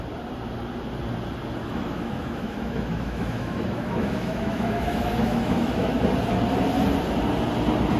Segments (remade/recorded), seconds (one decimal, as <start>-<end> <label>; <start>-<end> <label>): 0.0-1.6 recorded; 1.6-6.0 remade; 6.0-8.0 recorded